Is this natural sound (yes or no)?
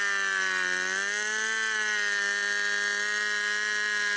yes